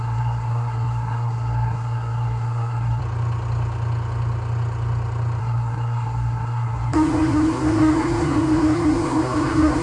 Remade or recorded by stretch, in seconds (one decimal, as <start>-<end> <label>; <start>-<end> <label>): 0.0-3.0 remade; 3.0-5.4 recorded; 5.4-9.8 remade